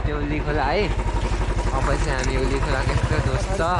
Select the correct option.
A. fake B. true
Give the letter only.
B